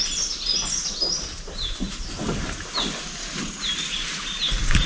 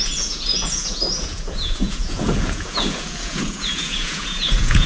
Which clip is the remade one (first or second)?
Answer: second